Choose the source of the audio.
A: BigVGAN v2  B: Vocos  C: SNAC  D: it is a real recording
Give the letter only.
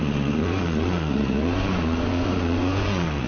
B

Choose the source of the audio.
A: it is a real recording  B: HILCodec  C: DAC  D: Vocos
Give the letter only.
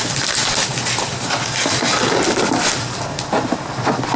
A